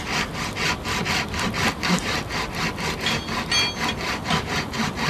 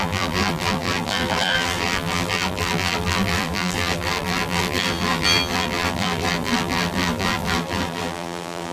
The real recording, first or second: first